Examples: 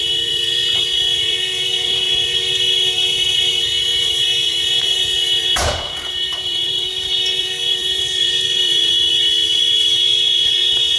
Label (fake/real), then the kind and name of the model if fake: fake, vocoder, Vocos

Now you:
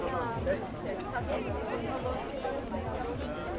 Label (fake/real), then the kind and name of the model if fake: real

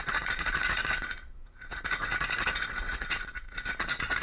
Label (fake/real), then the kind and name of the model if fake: fake, vocoder, Vocos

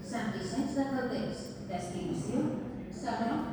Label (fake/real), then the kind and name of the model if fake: real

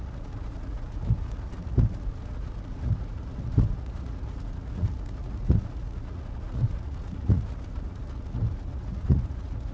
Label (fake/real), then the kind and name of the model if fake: fake, vocoder, Vocos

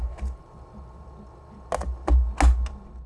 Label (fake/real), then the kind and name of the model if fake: real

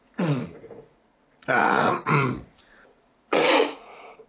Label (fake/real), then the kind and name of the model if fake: fake, vocoder, Vocos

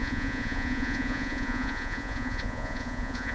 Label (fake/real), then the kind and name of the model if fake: fake, vocoder, Vocos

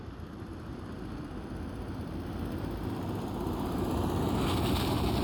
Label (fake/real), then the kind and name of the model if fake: real